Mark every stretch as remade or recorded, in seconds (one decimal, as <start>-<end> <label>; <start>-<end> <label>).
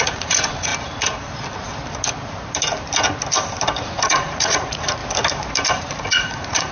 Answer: 0.0-0.7 remade; 0.7-3.8 recorded; 3.8-5.0 remade; 5.0-5.8 recorded; 5.8-6.7 remade